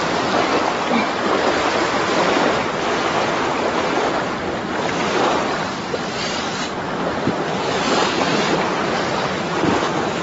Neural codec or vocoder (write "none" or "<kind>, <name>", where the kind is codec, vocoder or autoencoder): none